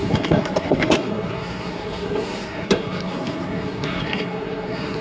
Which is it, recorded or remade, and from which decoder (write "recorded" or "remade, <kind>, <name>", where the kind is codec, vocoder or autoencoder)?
remade, codec, SNAC